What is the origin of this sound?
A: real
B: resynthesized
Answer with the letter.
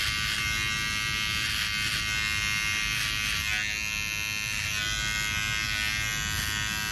A